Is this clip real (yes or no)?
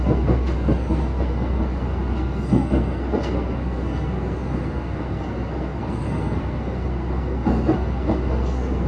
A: no